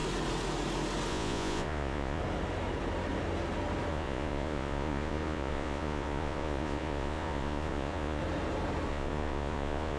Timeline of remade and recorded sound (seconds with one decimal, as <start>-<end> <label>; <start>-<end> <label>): 0.0-1.1 recorded; 1.1-2.2 remade; 2.2-3.9 recorded; 3.9-8.2 remade; 8.2-8.9 recorded; 8.9-10.0 remade